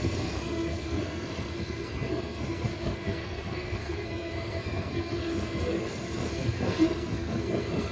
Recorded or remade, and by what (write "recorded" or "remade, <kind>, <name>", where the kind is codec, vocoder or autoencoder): remade, codec, SNAC